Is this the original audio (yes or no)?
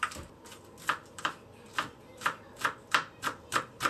no